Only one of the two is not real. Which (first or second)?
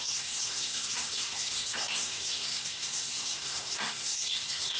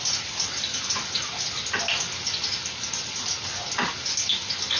first